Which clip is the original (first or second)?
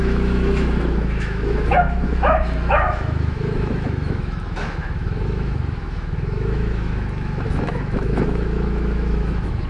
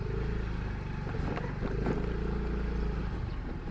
second